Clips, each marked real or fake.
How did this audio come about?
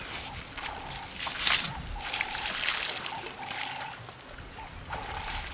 real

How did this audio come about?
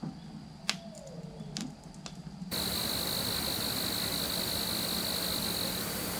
real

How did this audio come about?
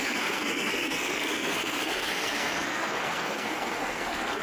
fake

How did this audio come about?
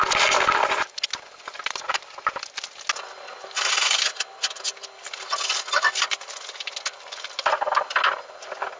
real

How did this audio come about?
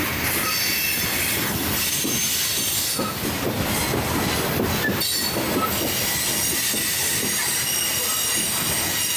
real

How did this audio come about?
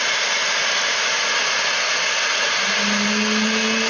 real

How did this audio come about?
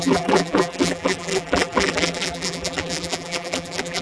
fake